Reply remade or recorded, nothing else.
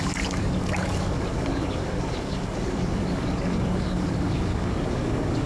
remade